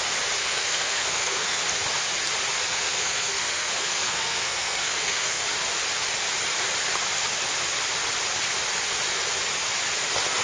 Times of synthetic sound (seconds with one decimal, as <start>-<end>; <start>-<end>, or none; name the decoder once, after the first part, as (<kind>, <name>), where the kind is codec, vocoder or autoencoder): 0.4-1.6 (codec, SNAC); 2.5-5.4